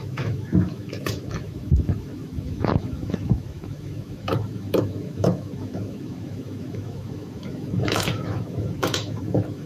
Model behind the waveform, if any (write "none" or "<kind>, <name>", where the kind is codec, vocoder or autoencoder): autoencoder, DAC-VAE